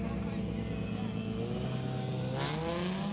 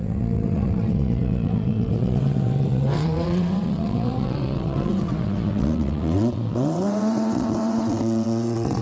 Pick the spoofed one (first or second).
second